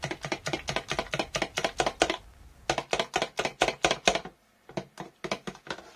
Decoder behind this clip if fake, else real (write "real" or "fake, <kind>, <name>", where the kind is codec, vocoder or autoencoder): real